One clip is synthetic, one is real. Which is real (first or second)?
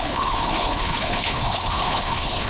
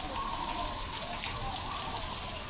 second